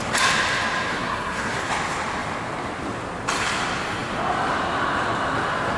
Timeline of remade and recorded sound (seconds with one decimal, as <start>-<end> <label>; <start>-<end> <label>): 0.0-0.9 recorded; 0.9-1.7 remade; 1.7-5.8 recorded